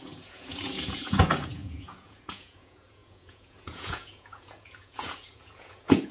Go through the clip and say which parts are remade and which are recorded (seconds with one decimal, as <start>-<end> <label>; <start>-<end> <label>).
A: 0.0-6.1 remade